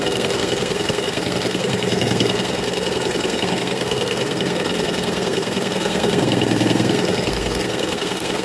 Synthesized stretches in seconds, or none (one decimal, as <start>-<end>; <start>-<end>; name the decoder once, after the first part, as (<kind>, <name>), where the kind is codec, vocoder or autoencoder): 0.0-8.4 (codec, SNAC)